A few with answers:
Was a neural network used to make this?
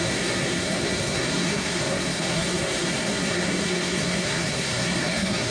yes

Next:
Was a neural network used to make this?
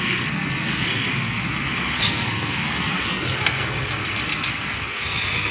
yes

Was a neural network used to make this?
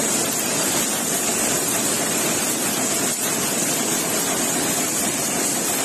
no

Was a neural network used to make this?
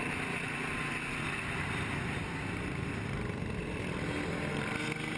no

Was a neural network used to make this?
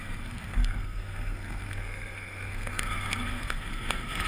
yes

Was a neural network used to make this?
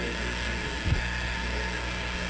yes